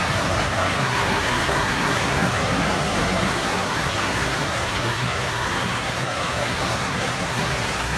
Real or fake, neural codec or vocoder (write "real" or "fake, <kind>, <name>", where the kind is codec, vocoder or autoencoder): fake, codec, SNAC